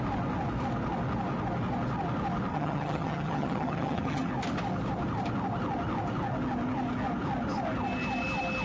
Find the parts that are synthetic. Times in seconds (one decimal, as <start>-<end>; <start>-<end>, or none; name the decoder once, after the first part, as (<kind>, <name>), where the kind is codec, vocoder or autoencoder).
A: 2.5-4.3 (vocoder, HiFi-GAN)